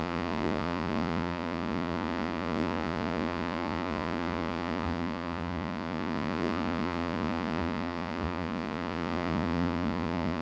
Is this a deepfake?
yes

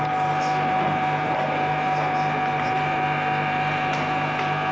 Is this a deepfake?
no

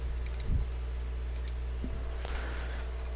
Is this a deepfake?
no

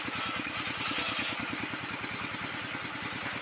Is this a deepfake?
no